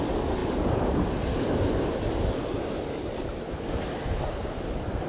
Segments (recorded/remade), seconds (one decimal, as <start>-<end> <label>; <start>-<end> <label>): 0.0-5.1 recorded